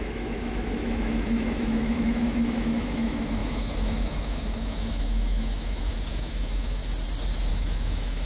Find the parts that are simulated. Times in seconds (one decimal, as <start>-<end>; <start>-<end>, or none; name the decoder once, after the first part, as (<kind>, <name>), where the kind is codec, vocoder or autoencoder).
0.0-6.8 (autoencoder, DAC-VAE); 7.5-8.3